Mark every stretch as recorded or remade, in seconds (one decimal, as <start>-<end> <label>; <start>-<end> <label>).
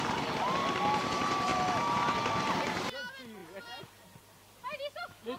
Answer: 0.0-1.5 recorded; 1.5-2.1 remade; 2.1-3.4 recorded; 3.4-4.8 remade; 4.8-5.4 recorded